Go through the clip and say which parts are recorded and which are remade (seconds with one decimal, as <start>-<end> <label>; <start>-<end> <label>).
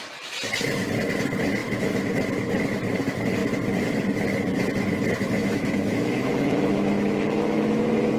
0.0-1.6 recorded; 1.6-2.1 remade; 2.1-5.4 recorded; 5.4-8.2 remade